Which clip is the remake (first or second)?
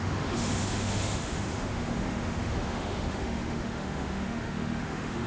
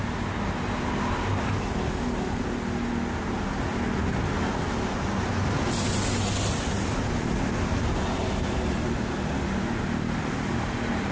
first